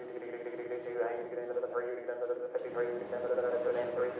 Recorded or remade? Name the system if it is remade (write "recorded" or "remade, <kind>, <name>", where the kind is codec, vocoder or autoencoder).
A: remade, vocoder, BigVGAN v2